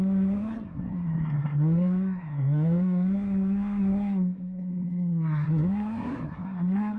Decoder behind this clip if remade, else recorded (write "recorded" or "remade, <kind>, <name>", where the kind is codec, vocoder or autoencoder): remade, codec, SNAC